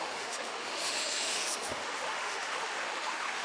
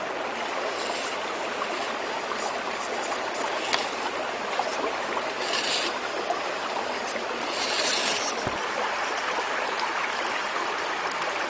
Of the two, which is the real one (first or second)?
second